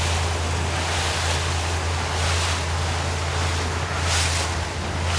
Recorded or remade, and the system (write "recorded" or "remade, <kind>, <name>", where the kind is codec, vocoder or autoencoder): recorded